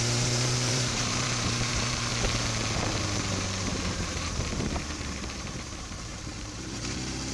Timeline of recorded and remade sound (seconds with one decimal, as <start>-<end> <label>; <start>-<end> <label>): 0.0-2.1 remade; 2.1-2.7 recorded; 2.7-7.3 remade